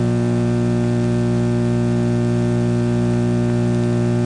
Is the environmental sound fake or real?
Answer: real